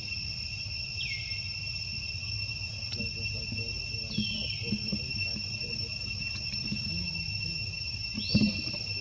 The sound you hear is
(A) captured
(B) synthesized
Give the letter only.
A